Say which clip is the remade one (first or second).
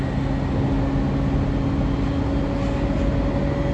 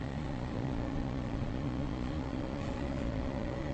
second